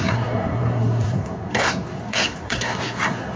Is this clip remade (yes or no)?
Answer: yes